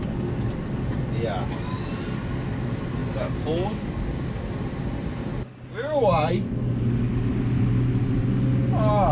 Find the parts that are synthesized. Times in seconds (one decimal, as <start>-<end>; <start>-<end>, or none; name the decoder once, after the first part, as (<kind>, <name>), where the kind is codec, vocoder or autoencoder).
none